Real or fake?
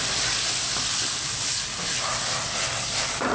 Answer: real